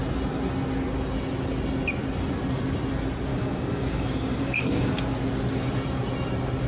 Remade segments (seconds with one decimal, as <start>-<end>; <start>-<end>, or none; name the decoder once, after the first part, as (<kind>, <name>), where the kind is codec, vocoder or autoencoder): 3.3-4.9 (codec, DAC)